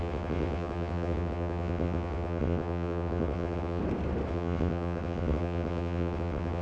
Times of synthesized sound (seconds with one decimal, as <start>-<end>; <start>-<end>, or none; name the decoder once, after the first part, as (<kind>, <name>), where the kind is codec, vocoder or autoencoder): 0.0-3.8 (vocoder, WaveNeXt); 4.3-6.6